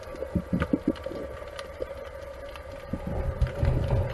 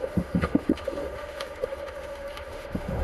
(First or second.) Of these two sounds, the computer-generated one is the second